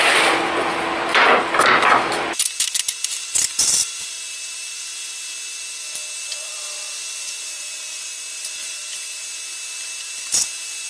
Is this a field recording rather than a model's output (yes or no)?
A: yes